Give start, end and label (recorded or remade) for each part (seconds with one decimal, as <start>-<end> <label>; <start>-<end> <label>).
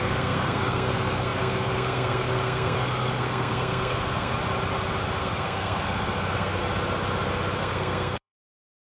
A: 0.0-4.3 remade; 4.3-5.2 recorded; 5.2-6.6 remade; 6.6-7.6 recorded; 7.6-8.8 remade